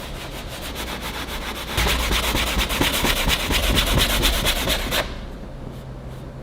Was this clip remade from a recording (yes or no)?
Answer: no